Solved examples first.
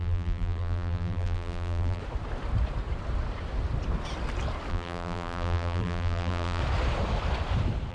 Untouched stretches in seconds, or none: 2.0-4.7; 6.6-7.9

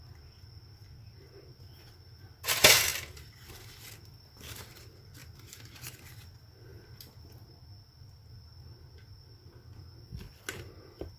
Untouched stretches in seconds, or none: 0.0-5.2; 6.0-11.2

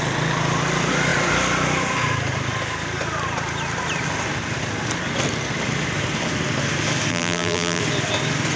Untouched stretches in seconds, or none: 0.0-7.1; 7.8-8.6

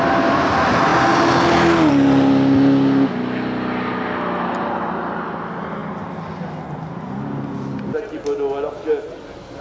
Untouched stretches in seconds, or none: 0.0-9.6

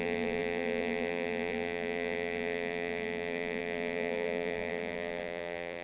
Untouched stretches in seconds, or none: none

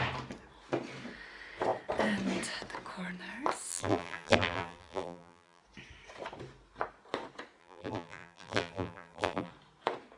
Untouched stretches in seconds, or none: 0.0-3.7; 5.6-7.6; 9.5-10.2